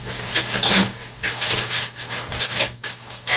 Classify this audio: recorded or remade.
remade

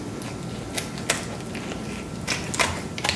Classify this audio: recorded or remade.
recorded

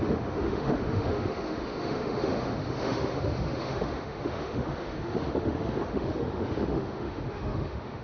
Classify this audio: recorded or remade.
remade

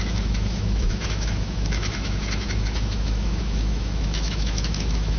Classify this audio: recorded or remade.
remade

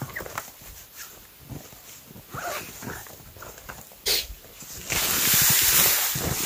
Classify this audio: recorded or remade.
recorded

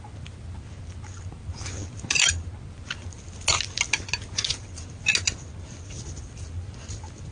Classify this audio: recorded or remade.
recorded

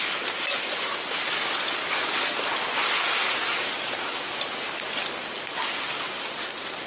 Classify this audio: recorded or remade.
recorded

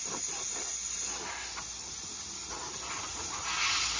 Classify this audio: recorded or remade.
recorded